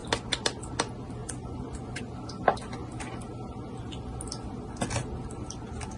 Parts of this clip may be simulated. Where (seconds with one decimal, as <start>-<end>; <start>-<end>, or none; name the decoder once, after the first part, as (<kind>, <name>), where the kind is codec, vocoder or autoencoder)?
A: 1.2-2.0 (vocoder, Vocos)